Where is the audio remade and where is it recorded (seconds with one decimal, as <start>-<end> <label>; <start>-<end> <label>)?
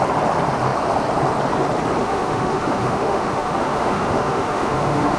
0.0-2.0 recorded; 2.0-5.2 remade